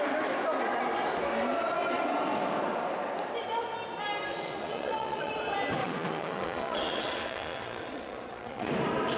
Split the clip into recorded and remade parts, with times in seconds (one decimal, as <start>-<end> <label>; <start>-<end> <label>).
0.0-4.3 recorded; 4.3-5.3 remade; 5.3-5.8 recorded; 5.8-8.7 remade; 8.7-9.2 recorded